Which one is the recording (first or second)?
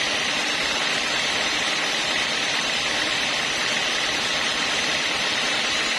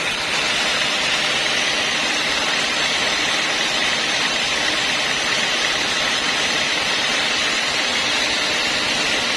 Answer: second